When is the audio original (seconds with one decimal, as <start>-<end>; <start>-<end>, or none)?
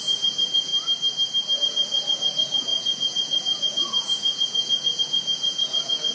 0.7-1.6